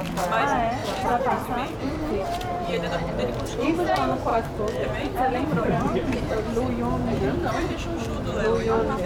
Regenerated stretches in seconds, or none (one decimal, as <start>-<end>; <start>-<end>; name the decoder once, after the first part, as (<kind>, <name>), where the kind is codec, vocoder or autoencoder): 0.8-3.1 (vocoder, BigVGAN v2); 4.3-6.2